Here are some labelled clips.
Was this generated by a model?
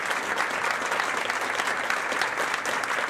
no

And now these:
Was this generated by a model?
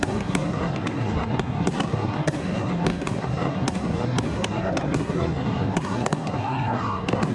yes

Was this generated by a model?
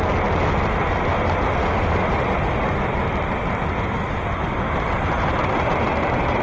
no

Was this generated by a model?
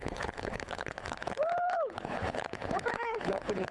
yes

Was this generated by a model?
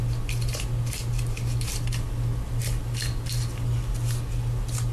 no